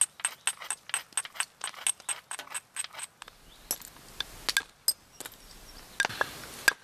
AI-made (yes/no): no